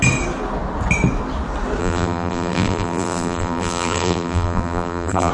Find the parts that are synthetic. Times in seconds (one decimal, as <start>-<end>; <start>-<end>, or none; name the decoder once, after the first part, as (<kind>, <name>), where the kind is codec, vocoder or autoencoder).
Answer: 1.8-5.3 (vocoder, BigVGAN v2)